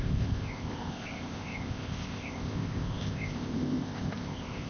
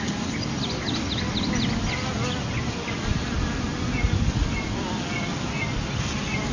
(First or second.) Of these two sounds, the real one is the second